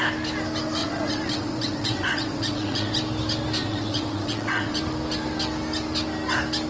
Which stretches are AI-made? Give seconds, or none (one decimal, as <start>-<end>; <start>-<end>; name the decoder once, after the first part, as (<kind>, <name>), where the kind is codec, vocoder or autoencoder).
0.8-2.9 (vocoder, WaveNeXt); 3.6-4.8